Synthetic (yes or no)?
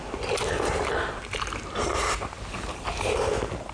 no